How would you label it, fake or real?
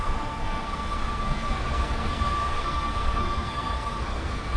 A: fake